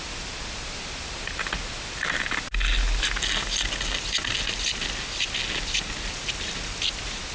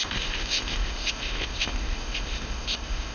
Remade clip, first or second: second